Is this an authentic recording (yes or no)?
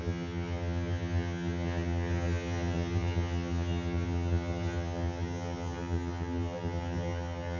no